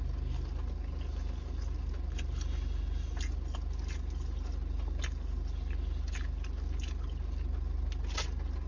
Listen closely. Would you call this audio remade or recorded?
recorded